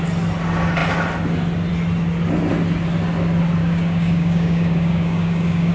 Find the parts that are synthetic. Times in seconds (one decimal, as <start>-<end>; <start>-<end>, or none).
3.6-5.7